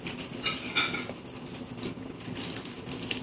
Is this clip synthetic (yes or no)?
no